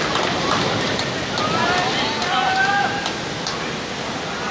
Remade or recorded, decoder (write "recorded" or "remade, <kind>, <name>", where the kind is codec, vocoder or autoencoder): recorded